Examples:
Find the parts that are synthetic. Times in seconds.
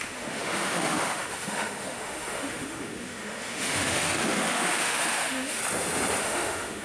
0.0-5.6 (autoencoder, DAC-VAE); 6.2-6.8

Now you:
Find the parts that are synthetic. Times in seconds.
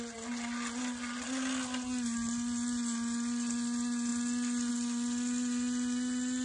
none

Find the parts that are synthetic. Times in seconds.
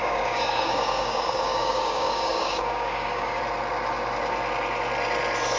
0.0-3.4 (codec, DAC)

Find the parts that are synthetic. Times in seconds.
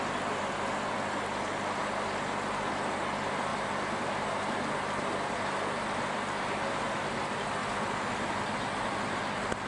none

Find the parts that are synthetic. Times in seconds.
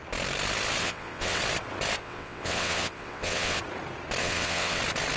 0.8-1.4 (vocoder, WaveNeXt); 2.0-3.6; 4.2-4.8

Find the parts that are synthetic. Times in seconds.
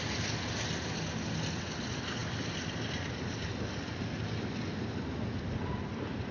none